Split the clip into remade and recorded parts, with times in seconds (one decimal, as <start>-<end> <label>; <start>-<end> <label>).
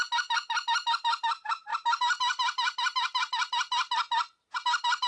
0.0-5.1 recorded